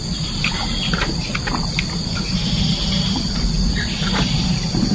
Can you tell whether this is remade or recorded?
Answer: recorded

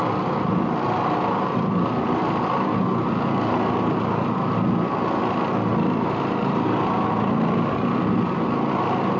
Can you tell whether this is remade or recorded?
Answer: recorded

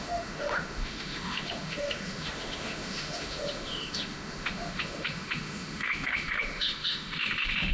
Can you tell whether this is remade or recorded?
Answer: remade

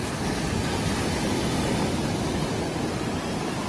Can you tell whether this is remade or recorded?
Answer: recorded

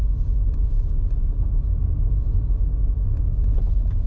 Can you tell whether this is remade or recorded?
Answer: recorded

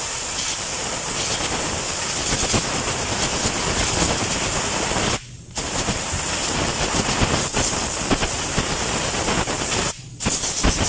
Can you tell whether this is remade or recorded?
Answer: recorded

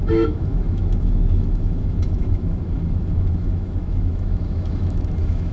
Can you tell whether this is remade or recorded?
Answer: remade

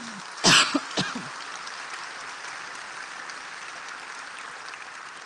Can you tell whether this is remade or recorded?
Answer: recorded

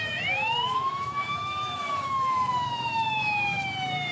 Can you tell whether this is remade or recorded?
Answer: remade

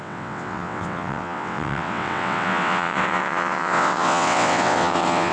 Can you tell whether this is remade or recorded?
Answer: remade